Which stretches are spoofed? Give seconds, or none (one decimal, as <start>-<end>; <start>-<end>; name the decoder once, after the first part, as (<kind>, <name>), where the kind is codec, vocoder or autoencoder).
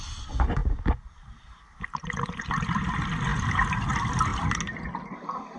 none